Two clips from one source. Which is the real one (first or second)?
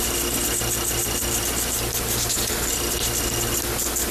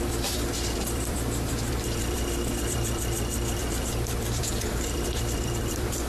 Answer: first